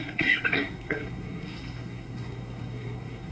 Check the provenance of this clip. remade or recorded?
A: remade